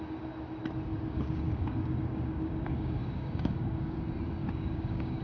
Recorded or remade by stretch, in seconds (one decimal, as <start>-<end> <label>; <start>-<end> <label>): 0.0-0.9 recorded; 0.9-4.0 remade; 4.0-4.4 recorded; 4.4-5.2 remade